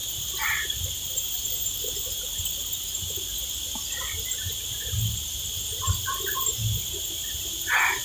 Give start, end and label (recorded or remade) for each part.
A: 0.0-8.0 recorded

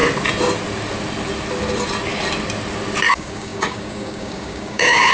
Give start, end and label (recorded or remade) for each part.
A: 0.0-3.1 recorded; 3.1-5.1 remade